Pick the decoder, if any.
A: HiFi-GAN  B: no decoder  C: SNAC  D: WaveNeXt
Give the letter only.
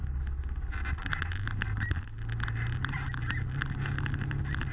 B